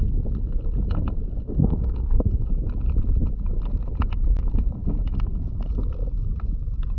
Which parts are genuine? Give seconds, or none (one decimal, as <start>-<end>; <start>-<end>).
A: 0.0-1.6; 2.5-7.0